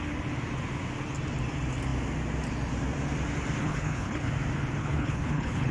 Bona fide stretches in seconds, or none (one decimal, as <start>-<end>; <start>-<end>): 0.0-3.6; 4.3-4.8

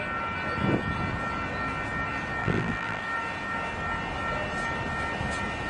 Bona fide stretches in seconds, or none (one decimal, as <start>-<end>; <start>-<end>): 0.0-2.4; 3.0-5.7

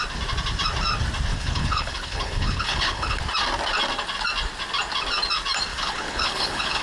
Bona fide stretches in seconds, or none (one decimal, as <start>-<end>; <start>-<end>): 0.0-1.3; 3.2-5.7